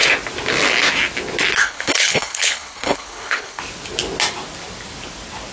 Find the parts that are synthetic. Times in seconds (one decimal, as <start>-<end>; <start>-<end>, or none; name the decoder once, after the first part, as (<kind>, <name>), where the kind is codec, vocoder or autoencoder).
1.6-3.6 (codec, HILCodec)